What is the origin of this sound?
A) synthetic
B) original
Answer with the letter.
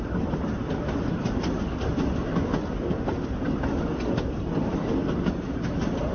B